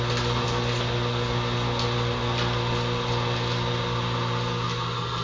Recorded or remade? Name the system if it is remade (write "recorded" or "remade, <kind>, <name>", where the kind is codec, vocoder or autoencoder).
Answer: recorded